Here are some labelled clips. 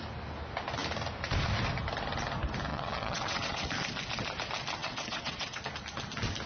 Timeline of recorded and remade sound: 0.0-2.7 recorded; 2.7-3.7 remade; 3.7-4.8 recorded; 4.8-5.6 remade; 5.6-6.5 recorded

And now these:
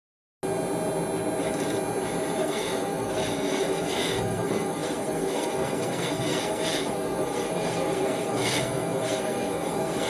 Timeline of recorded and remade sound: 0.0-2.4 recorded; 2.4-10.1 remade

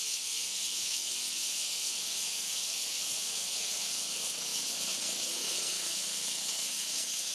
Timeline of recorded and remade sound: 0.0-7.3 remade

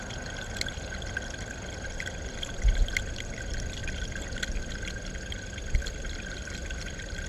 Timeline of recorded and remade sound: 0.0-7.3 recorded

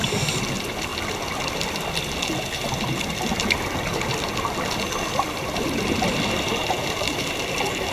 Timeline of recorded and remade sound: 0.0-7.9 recorded